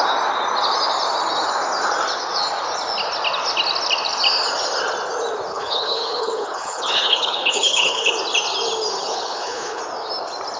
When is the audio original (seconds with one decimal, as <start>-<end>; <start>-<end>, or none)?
0.0-5.5; 8.1-8.9; 9.8-10.6